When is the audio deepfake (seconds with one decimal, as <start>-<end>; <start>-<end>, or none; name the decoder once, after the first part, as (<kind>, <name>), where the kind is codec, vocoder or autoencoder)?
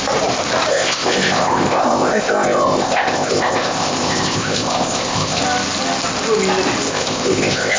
0.7-5.4 (codec, ZipCodec); 6.9-7.8